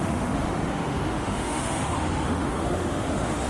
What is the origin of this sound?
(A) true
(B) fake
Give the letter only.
B